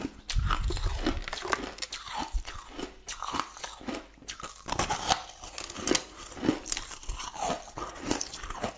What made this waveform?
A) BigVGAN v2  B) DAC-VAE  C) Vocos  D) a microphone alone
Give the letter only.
D